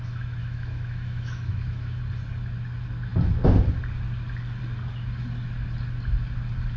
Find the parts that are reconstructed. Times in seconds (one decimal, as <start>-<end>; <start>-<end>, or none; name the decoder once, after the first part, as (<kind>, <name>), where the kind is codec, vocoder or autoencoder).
0.4-2.0 (autoencoder, DAC-VAE)